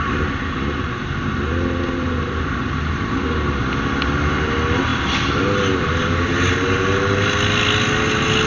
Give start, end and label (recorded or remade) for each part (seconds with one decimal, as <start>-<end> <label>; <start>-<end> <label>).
0.0-8.5 recorded